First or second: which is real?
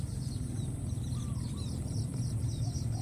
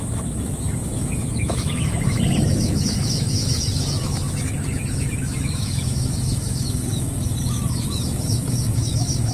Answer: first